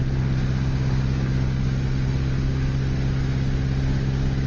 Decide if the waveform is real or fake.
real